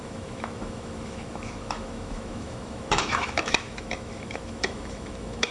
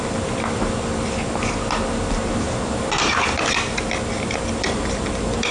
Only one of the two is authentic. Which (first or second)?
second